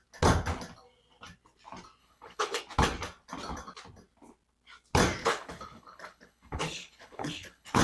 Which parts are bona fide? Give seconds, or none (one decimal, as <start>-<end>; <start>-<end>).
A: 0.0-2.0; 2.6-5.2